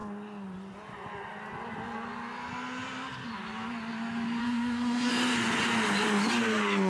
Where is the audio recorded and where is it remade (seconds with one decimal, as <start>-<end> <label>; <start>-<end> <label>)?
0.0-4.4 recorded; 4.4-5.1 remade; 5.1-6.9 recorded